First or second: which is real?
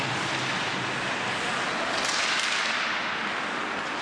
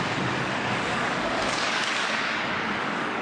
first